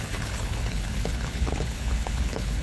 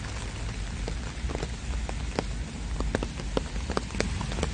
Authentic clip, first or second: second